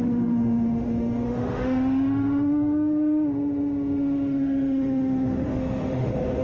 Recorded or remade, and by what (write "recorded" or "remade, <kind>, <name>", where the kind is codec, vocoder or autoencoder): remade, autoencoder, DAC-VAE